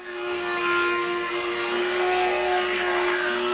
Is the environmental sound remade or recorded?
remade